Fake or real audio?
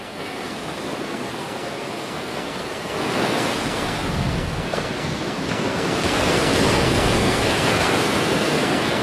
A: fake